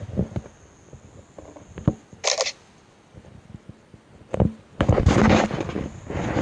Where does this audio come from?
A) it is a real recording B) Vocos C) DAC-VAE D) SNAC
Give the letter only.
A